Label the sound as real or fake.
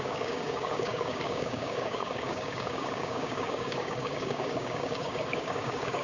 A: fake